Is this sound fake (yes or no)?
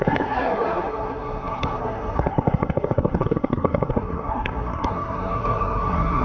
yes